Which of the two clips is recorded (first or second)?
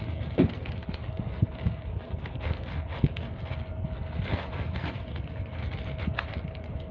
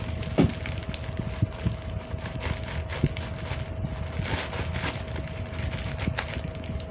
second